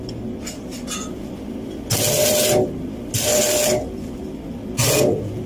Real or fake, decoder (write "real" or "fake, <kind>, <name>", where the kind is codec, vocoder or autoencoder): real